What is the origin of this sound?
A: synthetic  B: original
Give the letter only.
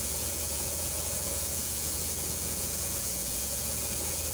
A